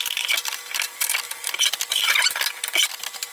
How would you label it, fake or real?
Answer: real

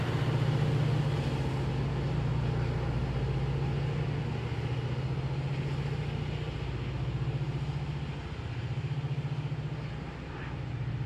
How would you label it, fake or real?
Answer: real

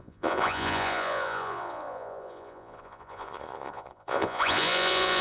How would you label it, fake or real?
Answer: fake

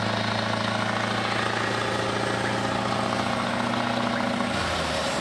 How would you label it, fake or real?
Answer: real